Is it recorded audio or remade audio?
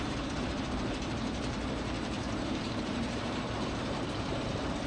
remade